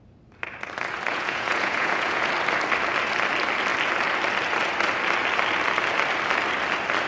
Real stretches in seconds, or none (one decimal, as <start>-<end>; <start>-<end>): 0.0-1.1; 2.3-7.1